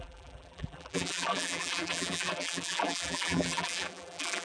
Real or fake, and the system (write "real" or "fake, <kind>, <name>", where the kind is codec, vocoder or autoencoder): fake, vocoder, BigVGAN v2